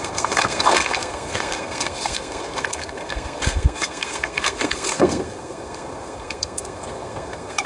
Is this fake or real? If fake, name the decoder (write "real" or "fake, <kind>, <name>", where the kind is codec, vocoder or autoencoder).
fake, codec, SNAC